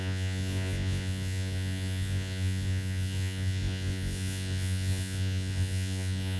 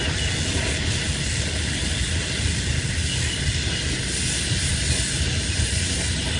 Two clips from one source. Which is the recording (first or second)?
second